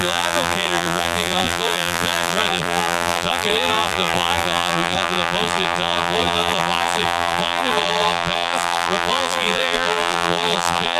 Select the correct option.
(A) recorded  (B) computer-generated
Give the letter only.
B